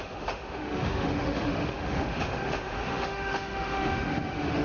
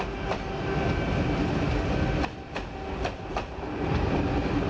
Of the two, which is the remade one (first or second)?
first